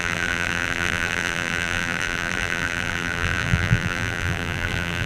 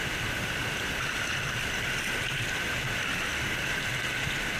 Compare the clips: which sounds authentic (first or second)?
second